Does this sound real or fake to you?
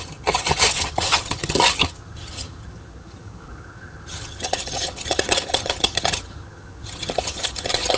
fake